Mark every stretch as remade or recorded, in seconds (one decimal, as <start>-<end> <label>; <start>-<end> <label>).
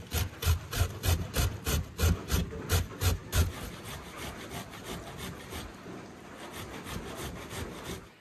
0.0-8.2 recorded